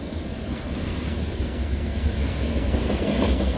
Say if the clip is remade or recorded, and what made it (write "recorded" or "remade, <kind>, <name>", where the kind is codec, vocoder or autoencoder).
remade, codec, SNAC